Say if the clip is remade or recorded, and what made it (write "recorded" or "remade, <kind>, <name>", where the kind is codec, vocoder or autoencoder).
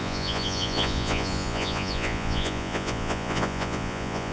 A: remade, vocoder, Vocos